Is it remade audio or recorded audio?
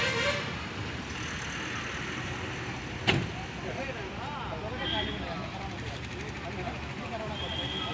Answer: recorded